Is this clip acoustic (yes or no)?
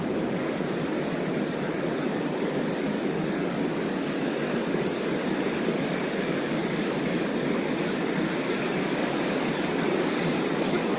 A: no